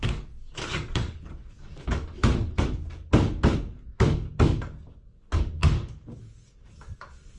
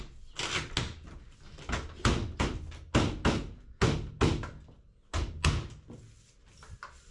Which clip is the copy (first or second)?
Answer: first